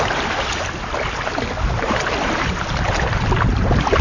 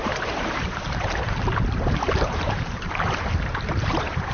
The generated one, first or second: second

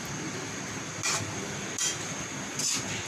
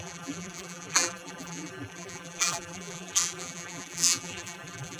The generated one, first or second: second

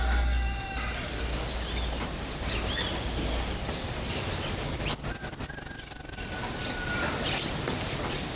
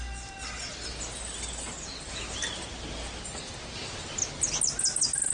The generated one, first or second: first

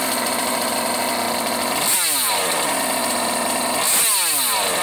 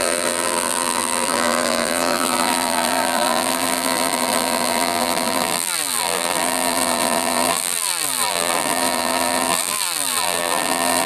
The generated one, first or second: second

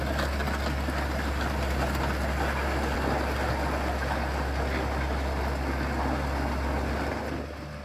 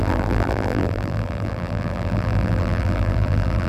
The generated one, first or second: second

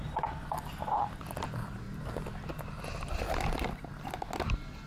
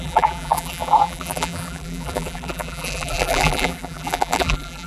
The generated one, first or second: second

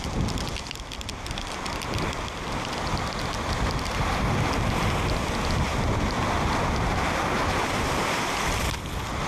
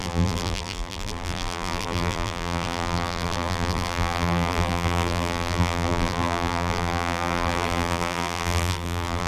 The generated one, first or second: second